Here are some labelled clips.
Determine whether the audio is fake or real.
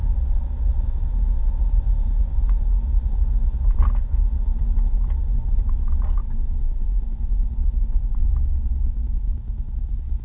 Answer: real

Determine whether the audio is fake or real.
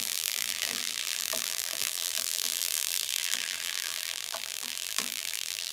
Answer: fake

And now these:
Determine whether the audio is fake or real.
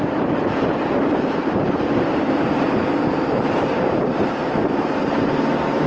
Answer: fake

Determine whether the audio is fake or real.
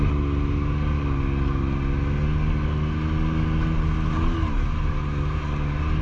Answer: real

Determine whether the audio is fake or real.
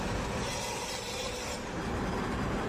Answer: fake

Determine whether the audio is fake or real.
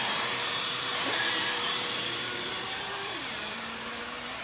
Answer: fake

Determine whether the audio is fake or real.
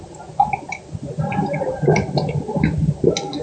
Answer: real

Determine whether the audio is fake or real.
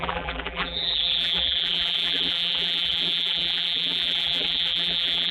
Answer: fake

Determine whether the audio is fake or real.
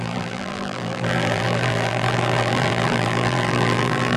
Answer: fake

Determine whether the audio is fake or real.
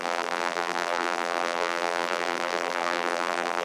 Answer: fake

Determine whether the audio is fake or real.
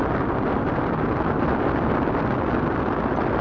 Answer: real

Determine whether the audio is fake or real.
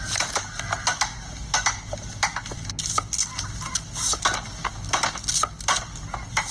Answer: real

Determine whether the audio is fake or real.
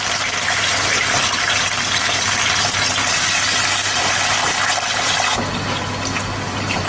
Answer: real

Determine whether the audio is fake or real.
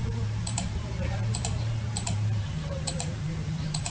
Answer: fake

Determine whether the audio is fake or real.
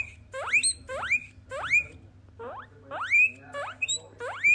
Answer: real